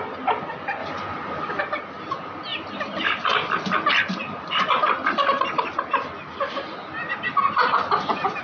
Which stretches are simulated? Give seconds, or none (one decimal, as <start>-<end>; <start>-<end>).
none